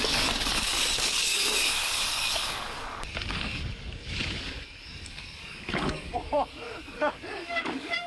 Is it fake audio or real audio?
fake